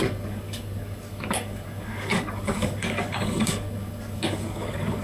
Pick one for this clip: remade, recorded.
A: remade